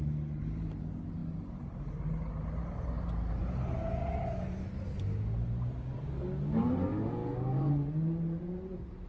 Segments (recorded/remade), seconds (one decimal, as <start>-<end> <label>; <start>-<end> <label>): 0.0-9.1 recorded